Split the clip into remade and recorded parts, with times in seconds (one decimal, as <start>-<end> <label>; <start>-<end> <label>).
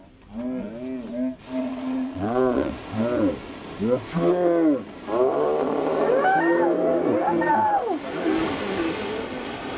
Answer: 0.0-1.6 recorded; 1.6-2.7 remade; 2.7-9.8 recorded